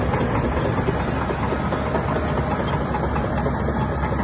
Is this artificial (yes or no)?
no